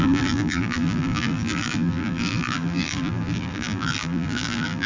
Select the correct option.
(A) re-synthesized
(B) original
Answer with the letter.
A